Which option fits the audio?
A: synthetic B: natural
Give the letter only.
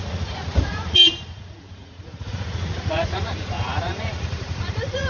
A